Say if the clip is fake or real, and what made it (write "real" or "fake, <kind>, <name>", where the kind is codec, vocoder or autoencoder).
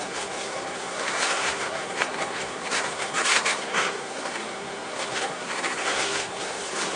fake, codec, SNAC